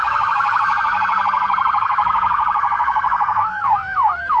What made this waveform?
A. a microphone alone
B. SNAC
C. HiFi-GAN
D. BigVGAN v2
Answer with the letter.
B